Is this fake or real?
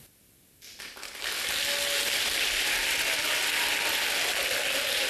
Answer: real